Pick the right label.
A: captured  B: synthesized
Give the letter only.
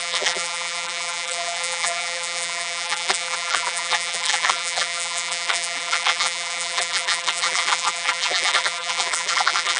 B